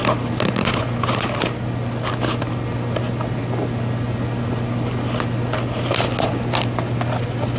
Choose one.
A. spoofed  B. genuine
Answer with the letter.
B